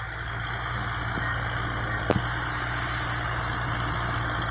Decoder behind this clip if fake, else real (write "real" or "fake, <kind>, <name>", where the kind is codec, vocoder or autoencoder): real